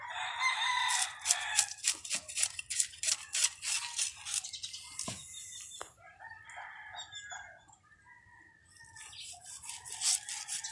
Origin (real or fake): real